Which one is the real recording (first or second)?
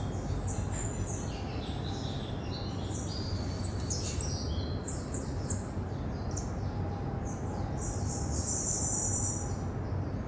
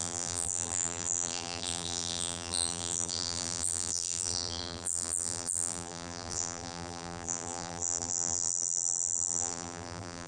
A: first